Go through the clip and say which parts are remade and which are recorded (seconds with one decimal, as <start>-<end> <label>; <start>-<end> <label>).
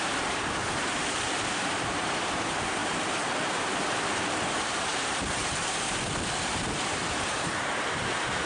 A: 0.0-2.8 remade; 2.8-3.5 recorded; 3.5-4.9 remade; 4.9-6.5 recorded; 6.5-8.5 remade